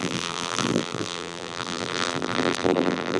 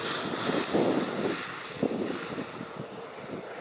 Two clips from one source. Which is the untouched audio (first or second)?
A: second